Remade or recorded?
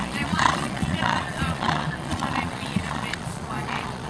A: remade